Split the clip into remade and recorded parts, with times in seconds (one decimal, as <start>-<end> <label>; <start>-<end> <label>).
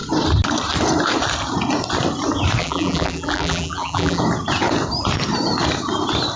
0.0-2.6 recorded; 2.6-4.2 remade; 4.2-6.4 recorded